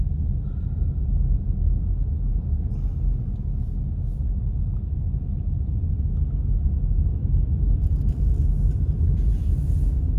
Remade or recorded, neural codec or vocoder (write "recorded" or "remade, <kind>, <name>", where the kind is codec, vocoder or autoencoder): recorded